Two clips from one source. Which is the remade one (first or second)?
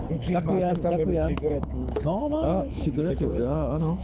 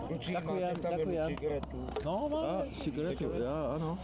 first